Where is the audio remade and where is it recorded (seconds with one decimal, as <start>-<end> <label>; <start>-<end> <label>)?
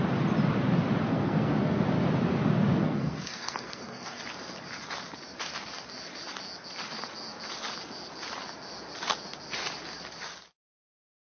0.0-1.1 recorded; 1.1-1.8 remade; 1.8-2.8 recorded; 2.8-4.2 remade; 4.2-11.2 recorded